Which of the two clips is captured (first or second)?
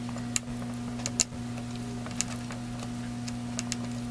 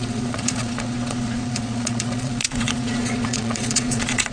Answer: first